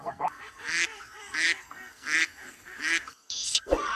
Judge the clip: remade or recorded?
remade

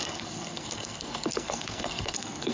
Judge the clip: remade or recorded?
remade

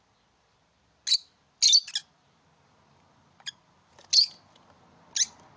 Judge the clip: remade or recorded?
recorded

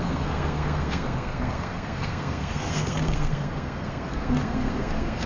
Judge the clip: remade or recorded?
remade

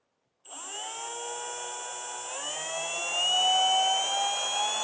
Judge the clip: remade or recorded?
recorded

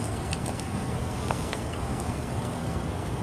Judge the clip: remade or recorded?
remade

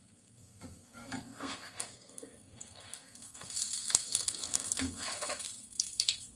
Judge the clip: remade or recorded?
remade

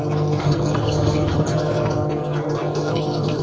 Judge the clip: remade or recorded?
remade